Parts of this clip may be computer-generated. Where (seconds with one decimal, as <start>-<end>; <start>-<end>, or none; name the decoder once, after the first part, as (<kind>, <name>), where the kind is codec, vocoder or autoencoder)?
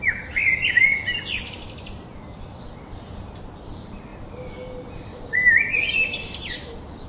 0.0-2.1 (vocoder, BigVGAN v2); 3.6-4.1; 4.9-7.1